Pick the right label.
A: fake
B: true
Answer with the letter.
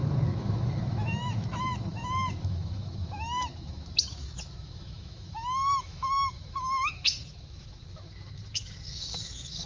A